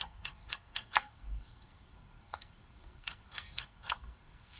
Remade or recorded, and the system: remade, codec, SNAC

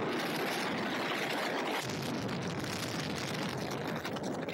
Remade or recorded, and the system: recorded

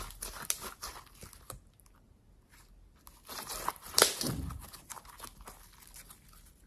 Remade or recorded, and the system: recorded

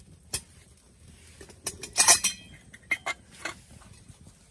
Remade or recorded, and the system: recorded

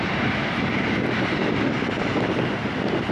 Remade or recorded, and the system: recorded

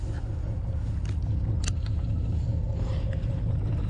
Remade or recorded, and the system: remade, vocoder, BigVGAN v2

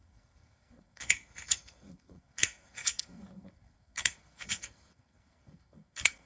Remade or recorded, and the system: remade, codec, SNAC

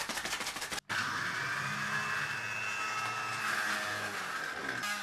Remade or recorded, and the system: recorded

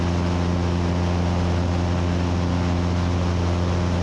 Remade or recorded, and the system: recorded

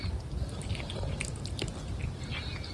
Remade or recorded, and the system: recorded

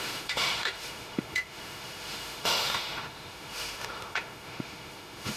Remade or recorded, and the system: remade, autoencoder, DAC-VAE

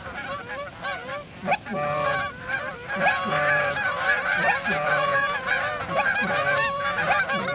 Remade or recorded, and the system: remade, vocoder, BigVGAN v2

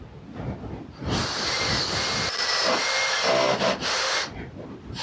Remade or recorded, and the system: recorded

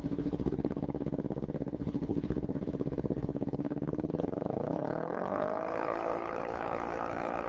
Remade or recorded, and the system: remade, codec, HILCodec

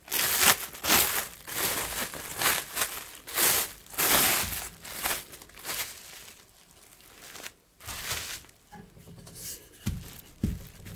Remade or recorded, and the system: recorded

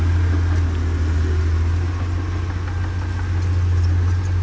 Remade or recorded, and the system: recorded